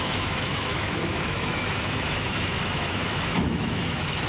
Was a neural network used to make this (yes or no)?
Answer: yes